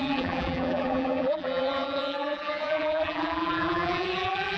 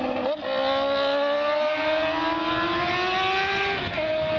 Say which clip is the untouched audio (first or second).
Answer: second